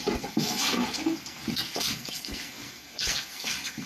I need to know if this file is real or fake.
fake